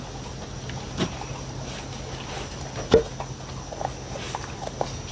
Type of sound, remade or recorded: recorded